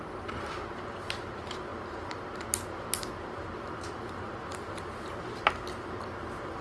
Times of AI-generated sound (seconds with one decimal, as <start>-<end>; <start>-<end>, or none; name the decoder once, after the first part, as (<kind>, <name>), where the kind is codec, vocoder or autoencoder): none